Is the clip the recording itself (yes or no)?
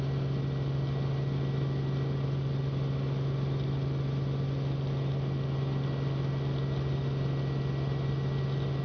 yes